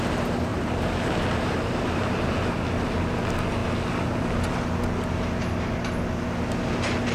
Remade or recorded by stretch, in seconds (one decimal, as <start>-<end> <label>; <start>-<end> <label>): 0.0-0.5 recorded; 0.5-2.5 remade; 2.5-7.1 recorded